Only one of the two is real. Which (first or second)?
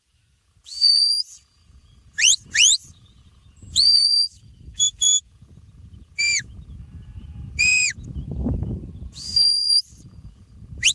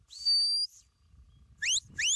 second